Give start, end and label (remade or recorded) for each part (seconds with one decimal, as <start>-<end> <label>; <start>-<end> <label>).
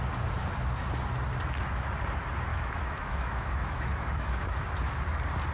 0.0-2.5 recorded; 2.5-5.0 remade; 5.0-5.5 recorded